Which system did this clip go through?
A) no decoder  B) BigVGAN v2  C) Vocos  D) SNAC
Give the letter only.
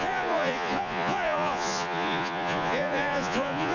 C